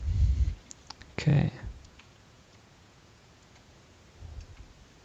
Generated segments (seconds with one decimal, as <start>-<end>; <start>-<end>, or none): 1.3-4.0